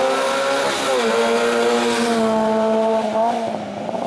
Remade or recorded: recorded